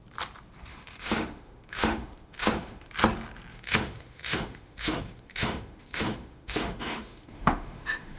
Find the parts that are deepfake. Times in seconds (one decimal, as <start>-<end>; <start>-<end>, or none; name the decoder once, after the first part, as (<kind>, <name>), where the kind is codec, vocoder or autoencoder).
0.7-2.9 (autoencoder, DAC-VAE); 3.5-8.2